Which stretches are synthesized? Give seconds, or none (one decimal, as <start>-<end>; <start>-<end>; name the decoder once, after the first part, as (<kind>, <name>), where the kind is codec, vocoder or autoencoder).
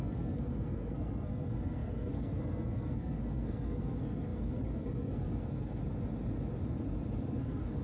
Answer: 0.0-5.8 (codec, SNAC); 7.3-7.8